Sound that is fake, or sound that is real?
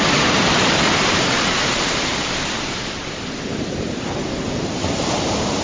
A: real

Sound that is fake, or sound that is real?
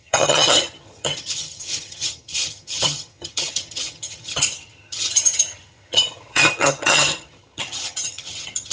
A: fake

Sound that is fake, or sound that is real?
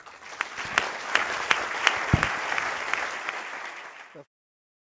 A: real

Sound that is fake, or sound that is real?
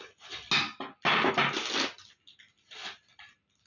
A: real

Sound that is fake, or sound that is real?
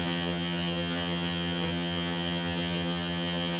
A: fake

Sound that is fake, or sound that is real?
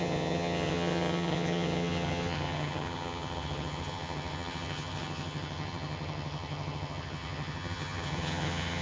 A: fake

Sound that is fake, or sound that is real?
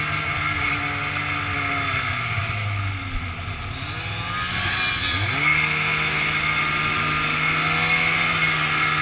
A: real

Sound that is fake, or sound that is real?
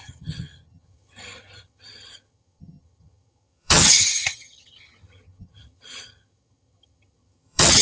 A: fake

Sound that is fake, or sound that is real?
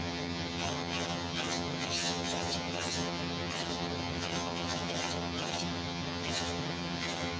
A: fake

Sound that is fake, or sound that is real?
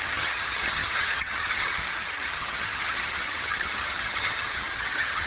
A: fake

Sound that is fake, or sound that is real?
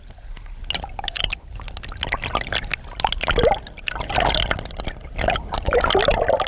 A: real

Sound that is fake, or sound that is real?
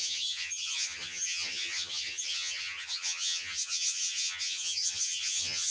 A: fake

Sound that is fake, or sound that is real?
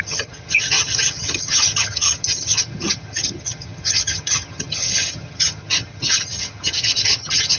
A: fake